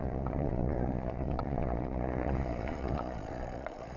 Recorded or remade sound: remade